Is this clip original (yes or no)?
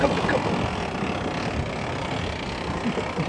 yes